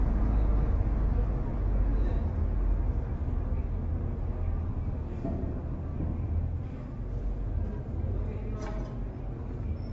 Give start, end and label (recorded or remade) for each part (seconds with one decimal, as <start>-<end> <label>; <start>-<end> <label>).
0.0-9.9 recorded